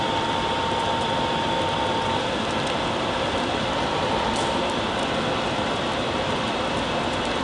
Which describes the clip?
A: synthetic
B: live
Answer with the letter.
A